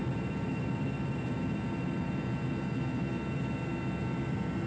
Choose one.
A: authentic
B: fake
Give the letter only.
A